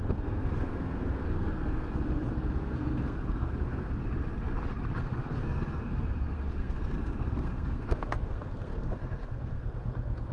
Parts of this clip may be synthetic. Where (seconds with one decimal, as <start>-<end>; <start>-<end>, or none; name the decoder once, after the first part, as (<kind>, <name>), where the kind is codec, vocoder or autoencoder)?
0.0-4.0 (codec, SNAC); 5.0-10.3